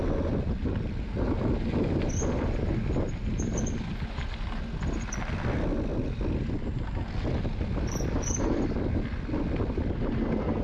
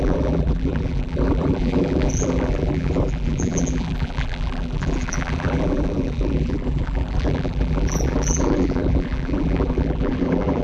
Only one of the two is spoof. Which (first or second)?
second